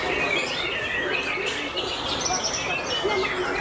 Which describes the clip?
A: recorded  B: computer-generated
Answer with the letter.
A